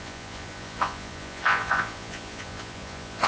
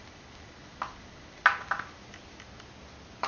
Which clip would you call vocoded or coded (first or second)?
first